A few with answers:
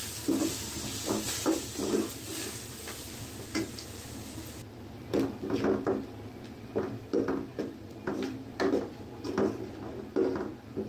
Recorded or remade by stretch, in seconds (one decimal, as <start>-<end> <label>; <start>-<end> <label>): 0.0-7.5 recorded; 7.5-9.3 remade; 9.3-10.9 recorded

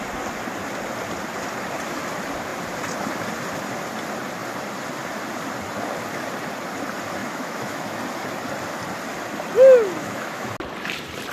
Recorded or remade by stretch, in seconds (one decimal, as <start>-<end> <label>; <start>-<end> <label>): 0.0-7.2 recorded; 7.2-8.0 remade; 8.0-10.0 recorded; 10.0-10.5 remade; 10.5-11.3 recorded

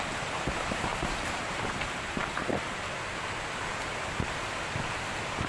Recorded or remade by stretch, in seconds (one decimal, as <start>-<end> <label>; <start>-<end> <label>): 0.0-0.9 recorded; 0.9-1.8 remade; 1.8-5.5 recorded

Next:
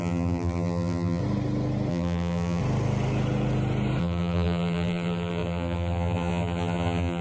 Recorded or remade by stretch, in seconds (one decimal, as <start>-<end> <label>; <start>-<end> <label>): 0.0-1.2 remade; 1.2-1.9 recorded; 1.9-2.6 remade; 2.6-4.0 recorded; 4.0-7.2 remade